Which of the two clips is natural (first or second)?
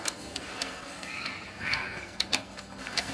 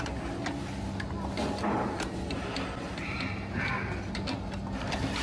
second